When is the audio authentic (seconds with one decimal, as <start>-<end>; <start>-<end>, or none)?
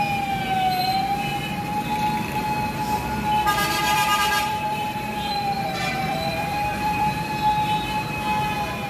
0.0-3.8; 7.3-8.9